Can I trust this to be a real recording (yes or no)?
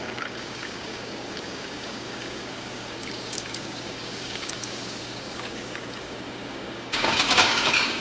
no